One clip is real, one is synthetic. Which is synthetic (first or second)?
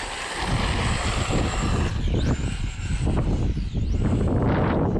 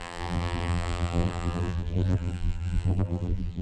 second